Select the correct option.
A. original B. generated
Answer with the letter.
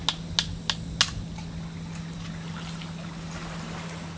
A